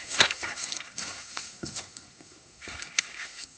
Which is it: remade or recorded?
remade